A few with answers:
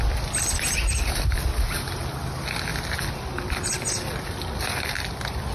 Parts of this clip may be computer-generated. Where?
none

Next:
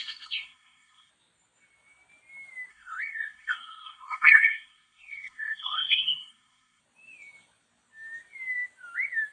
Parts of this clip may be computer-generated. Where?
0.0-1.1 (codec, SNAC); 2.7-6.8

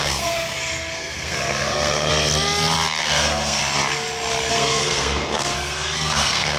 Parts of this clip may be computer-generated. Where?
0.0-2.1 (codec, SNAC); 3.0-3.6; 4.5-6.6